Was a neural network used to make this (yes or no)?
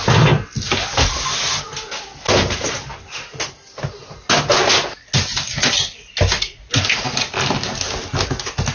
no